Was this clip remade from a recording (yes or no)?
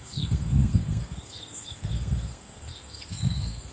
yes